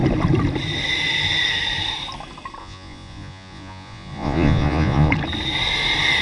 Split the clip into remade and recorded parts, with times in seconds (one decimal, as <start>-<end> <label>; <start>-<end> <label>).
0.0-2.6 recorded; 2.6-5.1 remade; 5.1-6.2 recorded